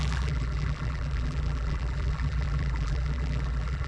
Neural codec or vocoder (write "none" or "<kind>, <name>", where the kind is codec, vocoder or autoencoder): vocoder, BigVGAN v2